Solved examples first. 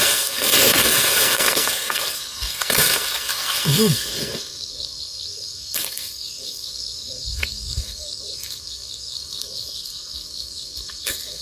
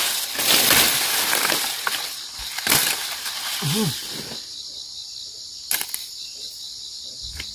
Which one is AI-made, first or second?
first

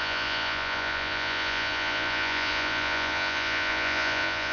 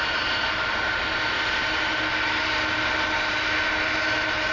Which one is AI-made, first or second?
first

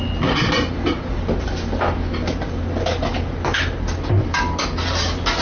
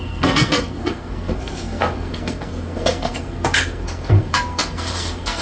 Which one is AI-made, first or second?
second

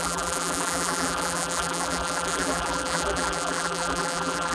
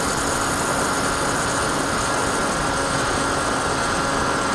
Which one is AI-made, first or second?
first